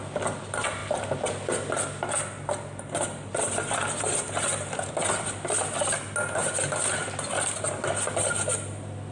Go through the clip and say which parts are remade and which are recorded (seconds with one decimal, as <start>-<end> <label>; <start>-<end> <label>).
0.0-9.1 recorded